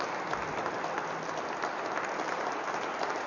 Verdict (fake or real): real